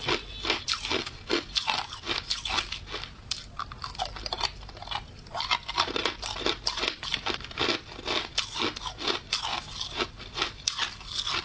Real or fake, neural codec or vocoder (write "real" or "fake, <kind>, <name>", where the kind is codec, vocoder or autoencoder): real